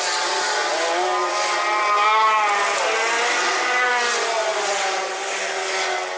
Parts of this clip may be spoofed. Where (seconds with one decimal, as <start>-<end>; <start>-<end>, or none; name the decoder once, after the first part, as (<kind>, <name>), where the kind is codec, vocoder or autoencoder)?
none